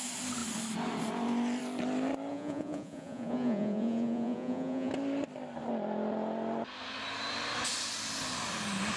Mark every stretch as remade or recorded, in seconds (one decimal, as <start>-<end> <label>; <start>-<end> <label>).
0.0-2.3 recorded; 2.3-4.9 remade; 4.9-9.0 recorded